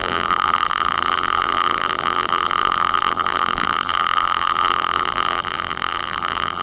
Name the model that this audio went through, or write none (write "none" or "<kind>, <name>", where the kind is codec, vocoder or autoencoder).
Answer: vocoder, BigVGAN v2